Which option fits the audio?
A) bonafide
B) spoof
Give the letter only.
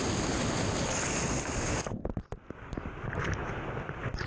A